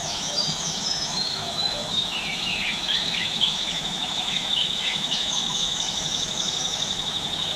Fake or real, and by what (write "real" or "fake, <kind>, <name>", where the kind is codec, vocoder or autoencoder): fake, autoencoder, DAC-VAE